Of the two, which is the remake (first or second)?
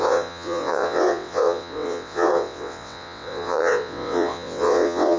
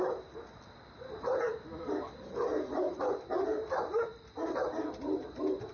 first